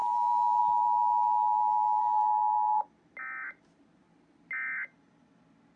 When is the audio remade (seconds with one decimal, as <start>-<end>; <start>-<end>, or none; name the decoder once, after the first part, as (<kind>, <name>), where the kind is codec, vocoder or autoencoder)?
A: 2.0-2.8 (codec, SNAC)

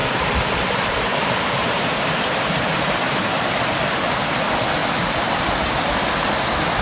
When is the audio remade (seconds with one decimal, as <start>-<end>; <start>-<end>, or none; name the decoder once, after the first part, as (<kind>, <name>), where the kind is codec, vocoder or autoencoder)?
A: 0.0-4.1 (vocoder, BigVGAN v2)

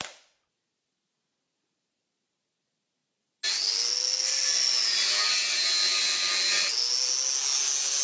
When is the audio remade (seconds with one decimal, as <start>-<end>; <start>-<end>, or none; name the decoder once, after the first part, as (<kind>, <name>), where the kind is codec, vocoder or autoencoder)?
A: none

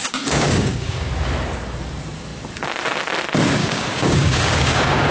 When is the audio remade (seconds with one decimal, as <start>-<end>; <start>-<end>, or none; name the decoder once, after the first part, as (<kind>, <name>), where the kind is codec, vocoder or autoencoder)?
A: 0.0-1.1 (codec, DAC); 3.6-5.1

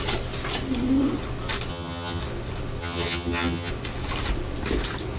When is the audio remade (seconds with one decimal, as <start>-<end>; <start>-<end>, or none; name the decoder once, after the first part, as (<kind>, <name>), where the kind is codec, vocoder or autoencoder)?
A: 1.7-2.2 (vocoder, HiFi-GAN); 2.8-3.7

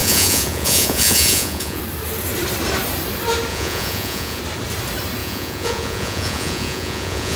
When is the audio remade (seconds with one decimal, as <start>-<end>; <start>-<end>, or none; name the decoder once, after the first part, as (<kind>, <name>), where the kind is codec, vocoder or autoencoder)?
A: 0.0-1.8 (vocoder, Vocos); 3.5-4.4; 5.2-7.4